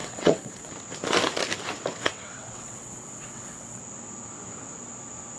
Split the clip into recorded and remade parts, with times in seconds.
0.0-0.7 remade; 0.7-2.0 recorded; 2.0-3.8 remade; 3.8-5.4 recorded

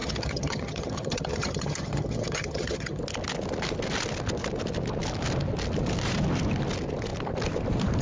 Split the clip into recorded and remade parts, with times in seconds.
0.0-3.0 remade; 3.0-8.0 recorded

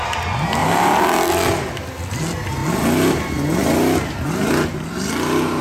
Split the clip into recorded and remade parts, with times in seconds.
0.0-5.6 recorded